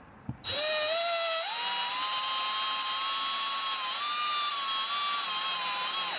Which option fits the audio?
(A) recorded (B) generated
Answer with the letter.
A